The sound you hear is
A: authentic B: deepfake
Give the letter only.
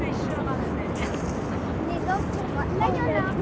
A